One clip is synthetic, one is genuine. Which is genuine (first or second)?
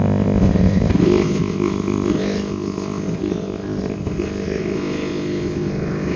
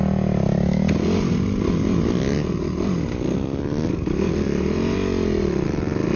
second